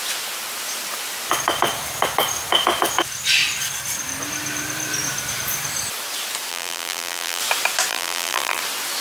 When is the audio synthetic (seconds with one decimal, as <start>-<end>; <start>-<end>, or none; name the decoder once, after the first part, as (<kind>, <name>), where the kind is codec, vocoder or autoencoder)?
6.5-7.4 (vocoder, BigVGAN v2); 7.9-8.6